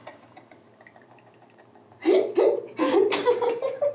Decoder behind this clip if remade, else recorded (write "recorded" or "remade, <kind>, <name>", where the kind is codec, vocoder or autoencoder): remade, vocoder, BigVGAN v2